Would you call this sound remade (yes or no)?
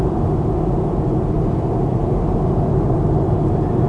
no